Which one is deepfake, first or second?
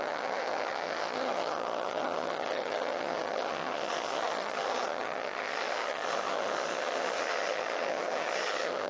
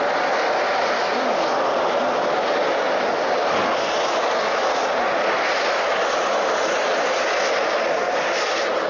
first